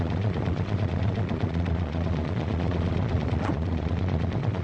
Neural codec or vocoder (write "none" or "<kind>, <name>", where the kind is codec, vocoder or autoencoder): vocoder, Vocos